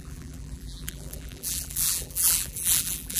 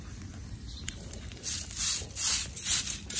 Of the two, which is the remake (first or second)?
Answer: first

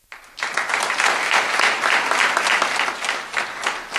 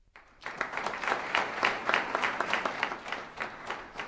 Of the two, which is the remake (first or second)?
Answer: second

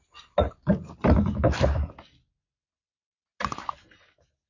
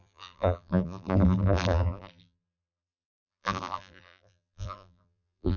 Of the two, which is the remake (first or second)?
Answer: second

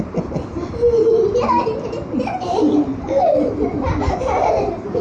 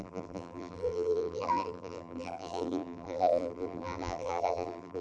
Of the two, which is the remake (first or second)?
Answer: second